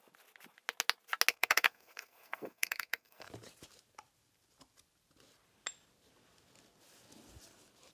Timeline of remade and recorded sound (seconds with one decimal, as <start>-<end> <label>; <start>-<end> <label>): 0.0-1.3 recorded; 1.3-3.3 remade; 3.3-7.9 recorded